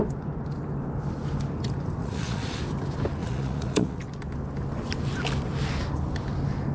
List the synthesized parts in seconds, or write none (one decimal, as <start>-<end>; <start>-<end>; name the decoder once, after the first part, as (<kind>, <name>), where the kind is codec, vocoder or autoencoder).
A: 2.0-2.6 (vocoder, Vocos); 3.2-4.0